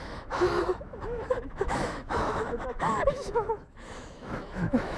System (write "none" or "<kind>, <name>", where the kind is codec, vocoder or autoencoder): autoencoder, DAC-VAE